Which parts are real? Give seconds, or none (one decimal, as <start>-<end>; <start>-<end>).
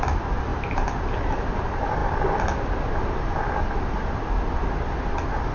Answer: 0.0-0.5; 1.6-5.5